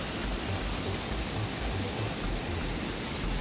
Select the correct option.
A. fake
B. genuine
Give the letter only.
B